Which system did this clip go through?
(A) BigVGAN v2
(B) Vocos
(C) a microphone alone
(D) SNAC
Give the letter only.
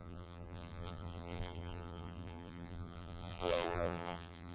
A